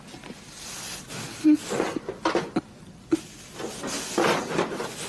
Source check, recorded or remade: recorded